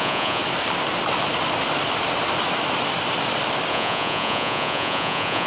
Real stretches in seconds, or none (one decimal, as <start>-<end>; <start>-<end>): 0.4-3.7